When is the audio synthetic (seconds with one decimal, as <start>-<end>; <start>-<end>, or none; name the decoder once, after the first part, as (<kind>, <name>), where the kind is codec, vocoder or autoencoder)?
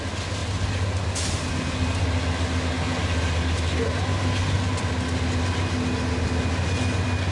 none